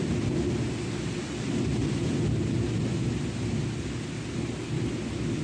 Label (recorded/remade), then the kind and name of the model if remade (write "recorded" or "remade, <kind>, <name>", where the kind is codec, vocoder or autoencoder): recorded